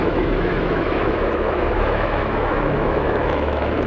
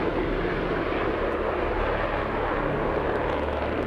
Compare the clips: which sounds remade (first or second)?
first